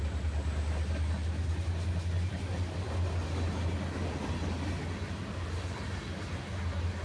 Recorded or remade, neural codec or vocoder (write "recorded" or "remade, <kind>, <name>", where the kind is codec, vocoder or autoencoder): recorded